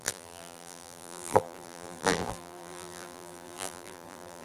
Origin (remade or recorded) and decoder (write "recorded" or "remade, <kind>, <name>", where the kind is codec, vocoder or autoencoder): remade, vocoder, BigVGAN v2